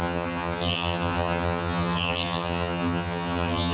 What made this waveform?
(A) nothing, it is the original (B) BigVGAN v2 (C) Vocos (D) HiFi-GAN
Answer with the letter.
D